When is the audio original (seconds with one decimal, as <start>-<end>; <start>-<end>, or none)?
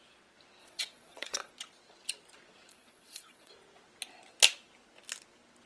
0.0-0.6; 1.5-2.7; 3.5-5.7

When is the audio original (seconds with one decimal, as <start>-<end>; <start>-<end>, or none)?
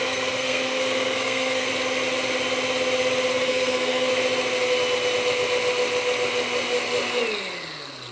1.7-3.3; 4.1-8.1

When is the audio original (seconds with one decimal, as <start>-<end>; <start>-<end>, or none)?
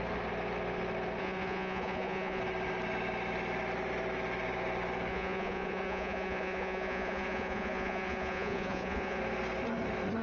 0.0-1.2; 2.4-5.1; 9.2-10.2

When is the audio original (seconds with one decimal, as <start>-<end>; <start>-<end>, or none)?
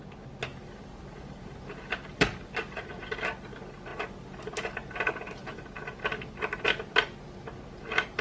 0.0-0.5; 2.5-8.2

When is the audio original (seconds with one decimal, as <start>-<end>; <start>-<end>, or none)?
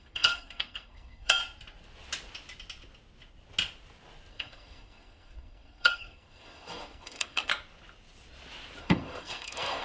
1.4-4.3; 7.5-8.8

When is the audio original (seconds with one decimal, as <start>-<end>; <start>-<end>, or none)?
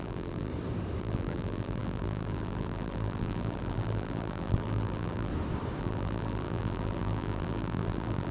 0.5-1.0; 5.3-5.8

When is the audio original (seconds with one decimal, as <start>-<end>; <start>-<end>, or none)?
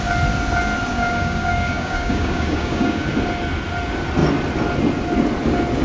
0.0-0.9; 3.1-5.8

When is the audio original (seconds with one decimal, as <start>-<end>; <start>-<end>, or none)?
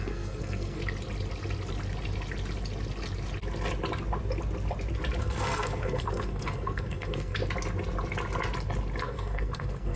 0.8-5.2; 7.4-9.0